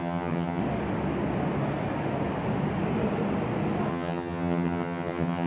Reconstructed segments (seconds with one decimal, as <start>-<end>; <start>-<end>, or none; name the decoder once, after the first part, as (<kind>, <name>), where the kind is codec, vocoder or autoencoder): 0.0-0.6 (vocoder, HiFi-GAN); 3.9-5.5